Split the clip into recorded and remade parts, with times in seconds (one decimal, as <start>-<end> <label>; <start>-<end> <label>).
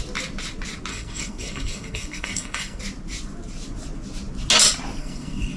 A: 0.0-0.9 recorded; 0.9-2.8 remade; 2.8-5.0 recorded; 5.0-5.6 remade